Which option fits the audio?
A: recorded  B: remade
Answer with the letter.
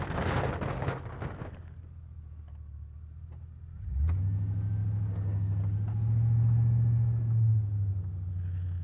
A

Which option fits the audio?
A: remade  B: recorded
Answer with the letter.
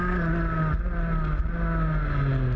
B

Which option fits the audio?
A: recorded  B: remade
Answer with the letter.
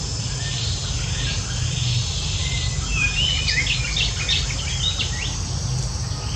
A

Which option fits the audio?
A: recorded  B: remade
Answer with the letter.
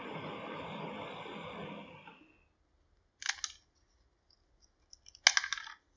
A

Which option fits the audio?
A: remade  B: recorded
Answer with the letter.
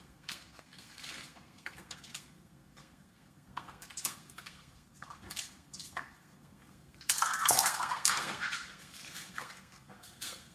A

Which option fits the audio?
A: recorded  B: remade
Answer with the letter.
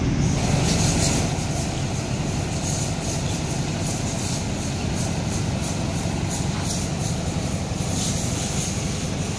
A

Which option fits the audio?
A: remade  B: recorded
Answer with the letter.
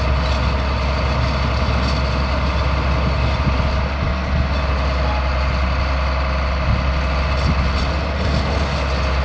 B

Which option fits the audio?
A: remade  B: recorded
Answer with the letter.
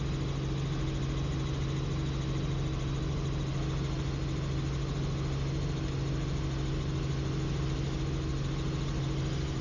B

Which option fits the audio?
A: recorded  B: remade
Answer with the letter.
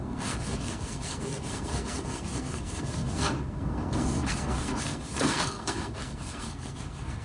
B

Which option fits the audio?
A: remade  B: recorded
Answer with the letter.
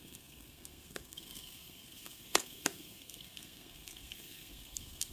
A